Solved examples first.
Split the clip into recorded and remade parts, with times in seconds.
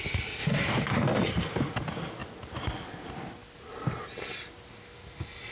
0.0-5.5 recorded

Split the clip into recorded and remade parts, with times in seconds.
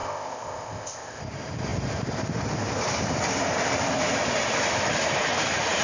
0.0-1.2 remade; 1.2-5.8 recorded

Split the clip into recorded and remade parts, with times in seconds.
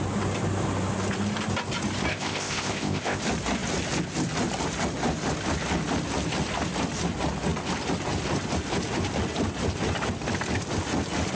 0.0-2.1 recorded; 2.1-3.2 remade; 3.2-11.3 recorded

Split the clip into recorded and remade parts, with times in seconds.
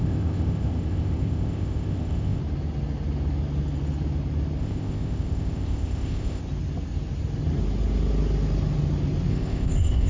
0.0-2.4 remade; 2.4-4.6 recorded; 4.6-6.4 remade; 6.4-9.3 recorded; 9.3-10.1 remade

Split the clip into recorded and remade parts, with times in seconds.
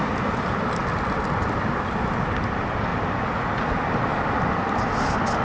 0.0-5.4 recorded